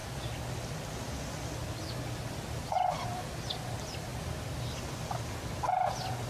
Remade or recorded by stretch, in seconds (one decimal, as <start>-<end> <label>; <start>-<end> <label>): 0.0-4.1 recorded; 4.1-4.8 remade; 4.8-6.3 recorded